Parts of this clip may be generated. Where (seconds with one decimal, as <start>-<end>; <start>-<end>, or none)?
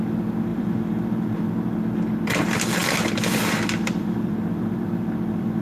0.5-1.5; 2.8-5.6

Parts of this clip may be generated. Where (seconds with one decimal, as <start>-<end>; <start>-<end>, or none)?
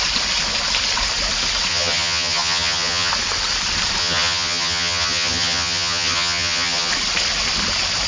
1.7-3.1; 4.0-6.9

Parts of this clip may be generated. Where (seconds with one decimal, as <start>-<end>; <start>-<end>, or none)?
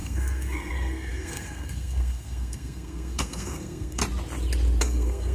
0.0-4.0; 4.8-5.3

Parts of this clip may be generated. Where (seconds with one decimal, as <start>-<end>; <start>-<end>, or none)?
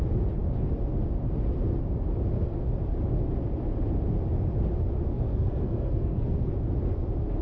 5.1-6.5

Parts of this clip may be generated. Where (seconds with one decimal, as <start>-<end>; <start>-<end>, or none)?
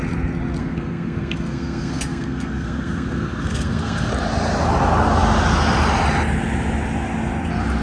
0.6-4.1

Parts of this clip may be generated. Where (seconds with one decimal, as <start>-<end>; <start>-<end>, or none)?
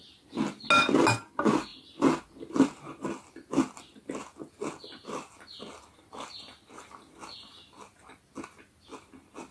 none